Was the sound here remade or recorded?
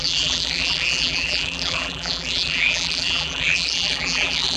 remade